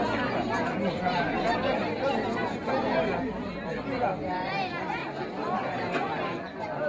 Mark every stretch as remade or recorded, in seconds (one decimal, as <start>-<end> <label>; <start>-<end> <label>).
0.0-6.9 recorded